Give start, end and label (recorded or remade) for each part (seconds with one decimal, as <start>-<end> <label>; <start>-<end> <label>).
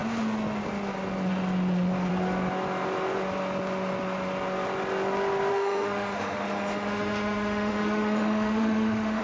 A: 0.0-5.5 recorded; 5.5-9.2 remade